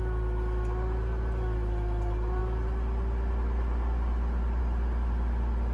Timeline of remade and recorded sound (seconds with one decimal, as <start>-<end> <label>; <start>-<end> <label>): 0.0-5.7 recorded